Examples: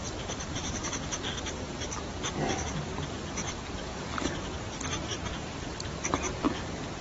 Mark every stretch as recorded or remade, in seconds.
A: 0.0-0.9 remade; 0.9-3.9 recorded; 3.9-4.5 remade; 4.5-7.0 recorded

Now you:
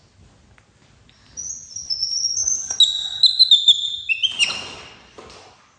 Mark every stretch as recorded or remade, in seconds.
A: 0.0-5.8 recorded

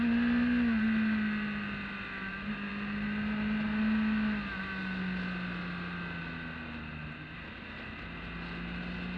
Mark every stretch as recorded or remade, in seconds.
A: 0.0-9.2 recorded

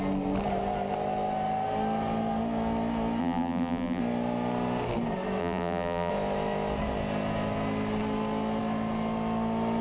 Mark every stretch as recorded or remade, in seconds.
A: 0.0-3.2 recorded; 3.2-4.0 remade; 4.0-5.4 recorded; 5.4-6.1 remade; 6.1-9.8 recorded

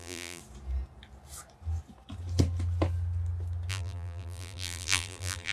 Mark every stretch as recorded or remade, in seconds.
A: 0.0-0.4 remade; 0.4-3.7 recorded; 3.7-5.5 remade

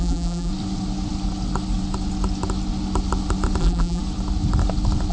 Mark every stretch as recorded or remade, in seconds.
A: 0.0-0.5 remade; 0.5-3.6 recorded; 3.6-4.0 remade; 4.0-5.1 recorded

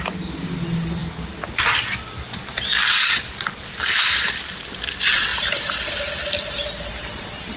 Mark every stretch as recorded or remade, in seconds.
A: 0.0-5.3 recorded; 5.3-6.4 remade; 6.4-7.6 recorded

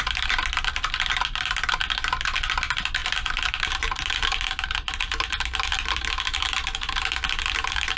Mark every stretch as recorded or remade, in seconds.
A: 0.0-8.0 recorded